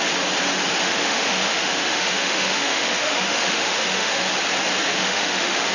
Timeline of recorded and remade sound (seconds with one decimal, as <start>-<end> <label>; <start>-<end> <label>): 0.0-0.9 recorded; 0.9-4.3 remade; 4.3-4.9 recorded; 4.9-5.7 remade